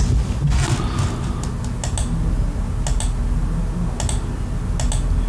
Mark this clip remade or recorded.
recorded